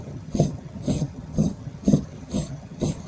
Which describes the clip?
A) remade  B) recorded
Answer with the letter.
A